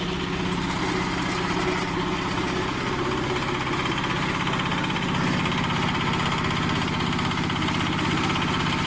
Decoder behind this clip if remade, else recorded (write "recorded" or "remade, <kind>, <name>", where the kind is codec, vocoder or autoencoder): recorded